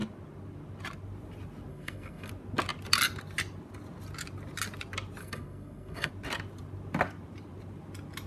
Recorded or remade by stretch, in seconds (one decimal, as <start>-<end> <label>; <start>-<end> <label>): 0.0-1.7 recorded; 1.7-2.3 remade; 2.3-5.2 recorded; 5.2-6.1 remade; 6.1-8.3 recorded